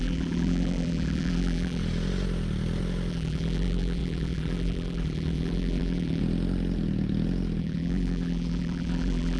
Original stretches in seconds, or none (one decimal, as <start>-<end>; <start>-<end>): 1.8-3.1; 6.2-7.6